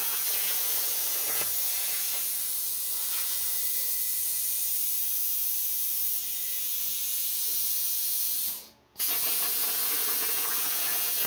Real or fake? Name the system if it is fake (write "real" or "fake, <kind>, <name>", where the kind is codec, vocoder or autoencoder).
fake, vocoder, Vocos